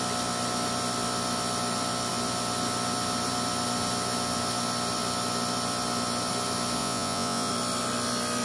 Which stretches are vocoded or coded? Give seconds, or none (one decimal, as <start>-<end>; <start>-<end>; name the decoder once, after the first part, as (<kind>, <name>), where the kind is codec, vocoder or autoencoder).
6.8-7.5 (vocoder, Vocos)